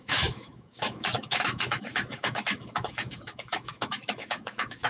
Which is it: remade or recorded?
remade